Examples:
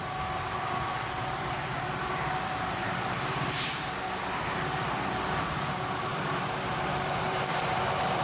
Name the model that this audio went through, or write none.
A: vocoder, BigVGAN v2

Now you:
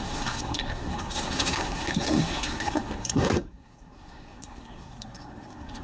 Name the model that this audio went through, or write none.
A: codec, SNAC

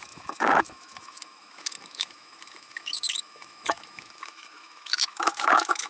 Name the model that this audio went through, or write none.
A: autoencoder, DAC-VAE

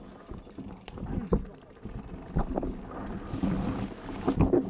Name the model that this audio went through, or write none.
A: none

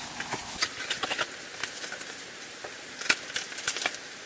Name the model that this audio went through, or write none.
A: none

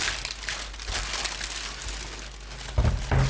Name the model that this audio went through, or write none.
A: none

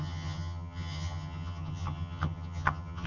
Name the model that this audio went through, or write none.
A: vocoder, HiFi-GAN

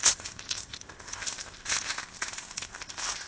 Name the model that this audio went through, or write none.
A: codec, ZipCodec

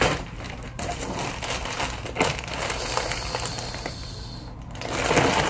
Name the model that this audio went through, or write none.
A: none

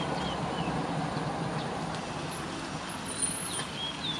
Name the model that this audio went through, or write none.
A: none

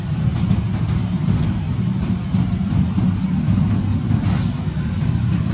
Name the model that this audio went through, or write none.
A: none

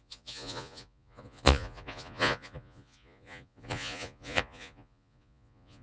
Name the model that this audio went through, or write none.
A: vocoder, Vocos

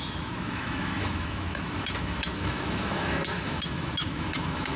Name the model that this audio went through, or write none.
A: autoencoder, DAC-VAE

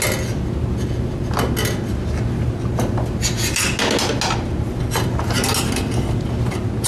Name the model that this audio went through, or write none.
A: none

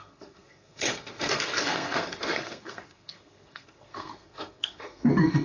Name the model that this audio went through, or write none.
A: codec, SNAC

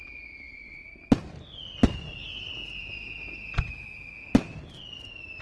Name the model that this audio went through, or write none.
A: none